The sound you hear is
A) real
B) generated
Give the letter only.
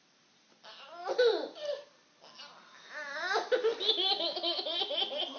A